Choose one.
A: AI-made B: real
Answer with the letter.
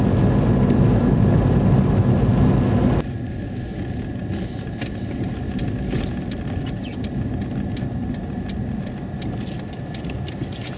B